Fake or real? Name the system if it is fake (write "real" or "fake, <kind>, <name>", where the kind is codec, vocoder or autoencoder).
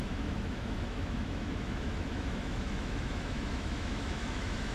fake, autoencoder, DAC-VAE